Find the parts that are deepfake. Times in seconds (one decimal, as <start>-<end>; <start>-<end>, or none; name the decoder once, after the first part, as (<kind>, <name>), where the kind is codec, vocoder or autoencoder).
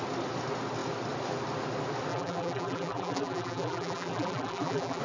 2.1-5.0 (vocoder, BigVGAN v2)